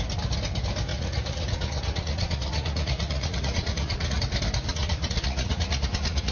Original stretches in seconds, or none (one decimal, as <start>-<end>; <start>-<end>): 0.0-0.9; 4.2-4.7